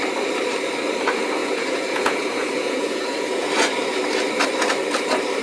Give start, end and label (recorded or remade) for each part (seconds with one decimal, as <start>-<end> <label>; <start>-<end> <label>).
0.0-1.4 recorded; 1.4-3.5 remade; 3.5-5.4 recorded